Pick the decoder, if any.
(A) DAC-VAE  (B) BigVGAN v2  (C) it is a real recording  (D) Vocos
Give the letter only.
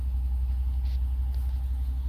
C